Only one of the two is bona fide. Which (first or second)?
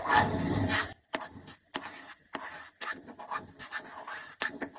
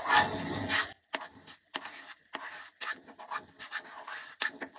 second